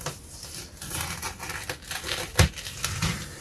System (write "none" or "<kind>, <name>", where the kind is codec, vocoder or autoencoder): none